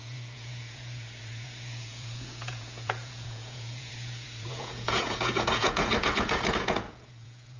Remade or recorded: remade